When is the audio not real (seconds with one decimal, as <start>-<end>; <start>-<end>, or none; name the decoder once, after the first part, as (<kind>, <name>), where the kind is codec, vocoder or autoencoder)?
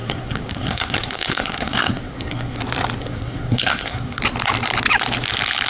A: 0.0-2.6 (codec, SNAC); 3.0-4.2